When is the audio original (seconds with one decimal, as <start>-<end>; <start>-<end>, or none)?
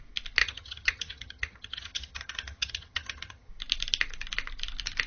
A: 0.0-0.4; 3.5-5.1